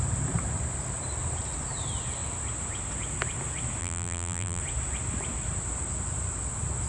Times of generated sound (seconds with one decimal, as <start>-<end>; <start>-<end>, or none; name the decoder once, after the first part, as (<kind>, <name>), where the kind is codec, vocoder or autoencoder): 3.8-4.6 (vocoder, BigVGAN v2)